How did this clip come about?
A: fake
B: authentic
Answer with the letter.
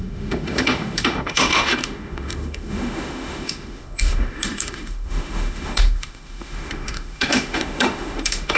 A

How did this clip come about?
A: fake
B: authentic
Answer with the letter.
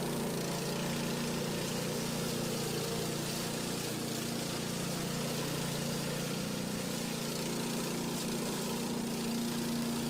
B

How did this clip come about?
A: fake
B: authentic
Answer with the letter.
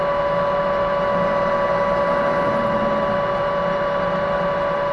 B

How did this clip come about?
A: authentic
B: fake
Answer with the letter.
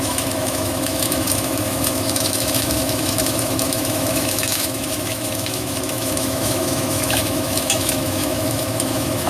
B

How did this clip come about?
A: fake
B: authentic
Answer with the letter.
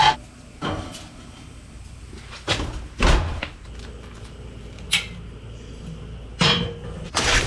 B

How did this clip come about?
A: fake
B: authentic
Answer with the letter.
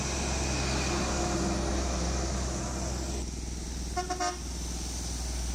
B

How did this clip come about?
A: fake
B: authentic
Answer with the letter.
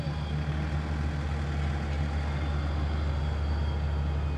B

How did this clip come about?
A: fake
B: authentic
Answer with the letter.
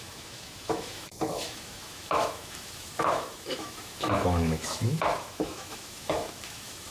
A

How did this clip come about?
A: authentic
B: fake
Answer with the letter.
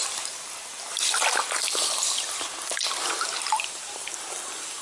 A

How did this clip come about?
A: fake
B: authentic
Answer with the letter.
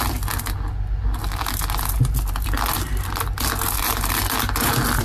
B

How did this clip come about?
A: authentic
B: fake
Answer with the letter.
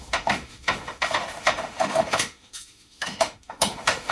B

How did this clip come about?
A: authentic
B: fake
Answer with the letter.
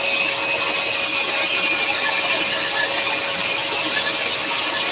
A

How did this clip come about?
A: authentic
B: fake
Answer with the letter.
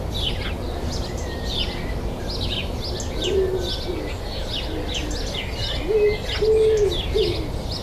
A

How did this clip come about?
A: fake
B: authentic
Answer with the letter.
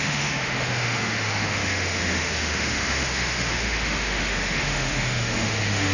A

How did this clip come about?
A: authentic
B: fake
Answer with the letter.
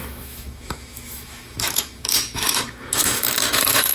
B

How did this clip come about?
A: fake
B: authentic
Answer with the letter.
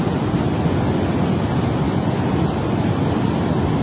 B